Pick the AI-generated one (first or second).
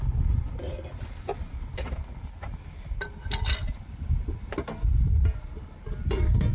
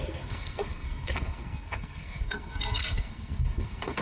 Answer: second